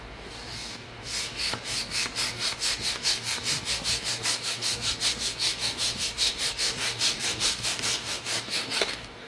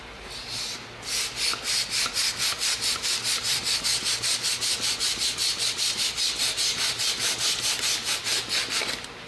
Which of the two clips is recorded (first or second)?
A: second